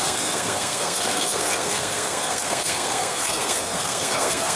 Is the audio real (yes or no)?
no